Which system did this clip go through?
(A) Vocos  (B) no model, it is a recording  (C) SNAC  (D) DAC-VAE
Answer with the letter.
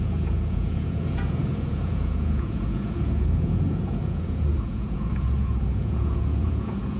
A